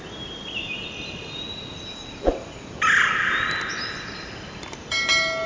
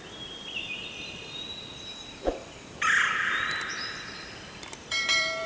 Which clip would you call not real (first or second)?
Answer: second